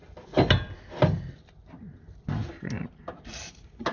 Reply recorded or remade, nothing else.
recorded